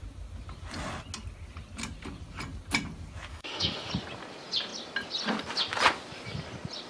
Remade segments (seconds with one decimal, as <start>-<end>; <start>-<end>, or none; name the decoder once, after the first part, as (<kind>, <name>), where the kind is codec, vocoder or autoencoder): 3.3-3.9 (autoencoder, DAC-VAE)

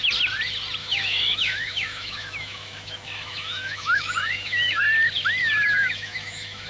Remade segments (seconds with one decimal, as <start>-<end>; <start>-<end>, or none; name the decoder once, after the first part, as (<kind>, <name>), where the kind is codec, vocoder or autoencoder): 0.8-4.8 (autoencoder, DAC-VAE); 5.4-6.7

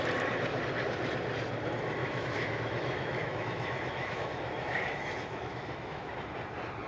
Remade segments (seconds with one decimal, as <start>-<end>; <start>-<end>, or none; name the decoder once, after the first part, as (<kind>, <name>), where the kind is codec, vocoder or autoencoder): 2.0-6.1 (autoencoder, DAC-VAE)

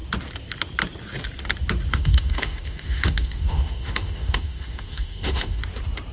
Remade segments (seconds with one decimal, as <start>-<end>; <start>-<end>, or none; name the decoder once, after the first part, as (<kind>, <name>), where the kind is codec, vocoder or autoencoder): 1.9-5.6 (autoencoder, DAC-VAE)

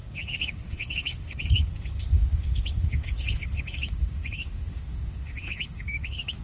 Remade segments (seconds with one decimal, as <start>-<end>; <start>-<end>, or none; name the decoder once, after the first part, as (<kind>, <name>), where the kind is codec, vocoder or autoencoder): 0.0-6.4 (autoencoder, DAC-VAE)

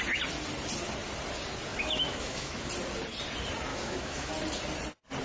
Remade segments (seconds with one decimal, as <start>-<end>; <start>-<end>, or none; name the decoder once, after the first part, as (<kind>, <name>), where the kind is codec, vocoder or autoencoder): 1.7-2.7 (autoencoder, DAC-VAE); 3.7-4.3